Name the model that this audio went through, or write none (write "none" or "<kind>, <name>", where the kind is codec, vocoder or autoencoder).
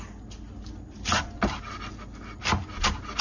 none